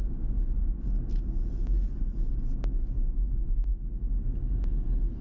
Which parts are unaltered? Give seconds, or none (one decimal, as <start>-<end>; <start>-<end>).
0.0-5.2